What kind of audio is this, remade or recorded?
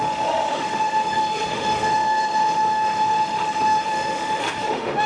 remade